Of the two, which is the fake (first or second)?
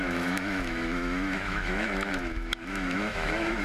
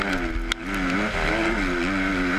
first